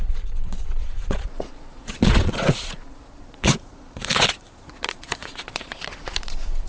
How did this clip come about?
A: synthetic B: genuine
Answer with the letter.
A